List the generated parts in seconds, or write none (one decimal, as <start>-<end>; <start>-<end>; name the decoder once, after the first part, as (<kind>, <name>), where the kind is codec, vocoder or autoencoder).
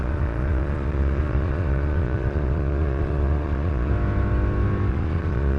0.0-3.9 (vocoder, Vocos); 4.9-5.6